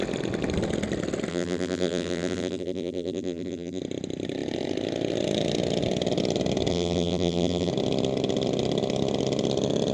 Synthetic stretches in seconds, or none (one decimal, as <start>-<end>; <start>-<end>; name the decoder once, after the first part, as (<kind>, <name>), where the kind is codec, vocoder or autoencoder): 1.3-3.8 (vocoder, BigVGAN v2); 6.7-7.7